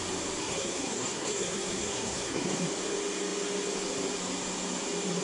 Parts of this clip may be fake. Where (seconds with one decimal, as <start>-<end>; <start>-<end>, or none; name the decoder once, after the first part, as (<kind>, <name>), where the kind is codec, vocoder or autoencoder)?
0.4-2.6 (codec, SNAC)